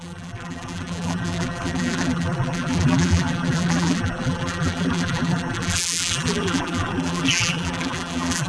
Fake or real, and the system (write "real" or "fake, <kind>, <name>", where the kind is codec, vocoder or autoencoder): fake, vocoder, BigVGAN v2